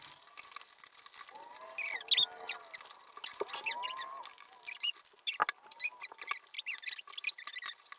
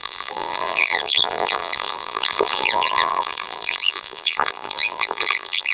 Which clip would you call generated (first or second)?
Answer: second